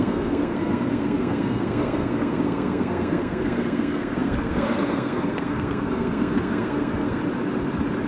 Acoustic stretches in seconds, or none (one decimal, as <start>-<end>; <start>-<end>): 7.2-8.1